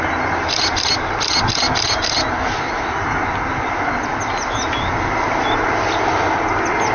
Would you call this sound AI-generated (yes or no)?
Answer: no